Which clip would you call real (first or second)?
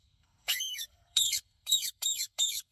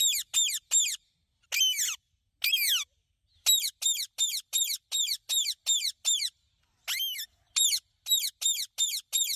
second